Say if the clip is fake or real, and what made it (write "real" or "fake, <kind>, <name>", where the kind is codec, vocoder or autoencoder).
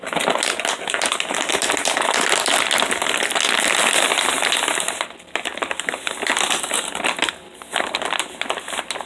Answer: real